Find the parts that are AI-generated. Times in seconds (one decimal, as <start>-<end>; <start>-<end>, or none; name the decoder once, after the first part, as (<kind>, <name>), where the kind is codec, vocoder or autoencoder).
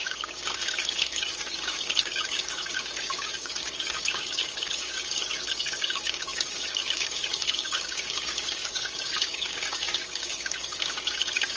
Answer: 0.0-11.6 (codec, DAC)